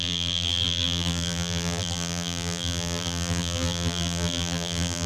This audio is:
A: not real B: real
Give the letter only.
A